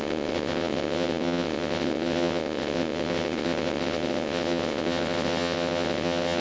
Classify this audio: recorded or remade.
remade